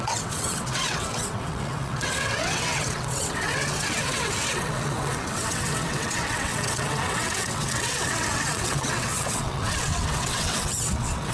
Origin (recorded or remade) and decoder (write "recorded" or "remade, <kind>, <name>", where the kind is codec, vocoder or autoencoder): remade, vocoder, WaveNeXt